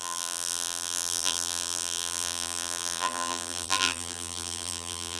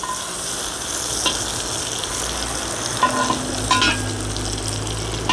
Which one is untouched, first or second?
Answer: second